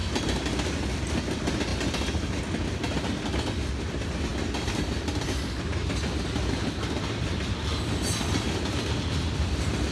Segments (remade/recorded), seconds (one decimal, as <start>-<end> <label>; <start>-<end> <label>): 0.0-9.9 recorded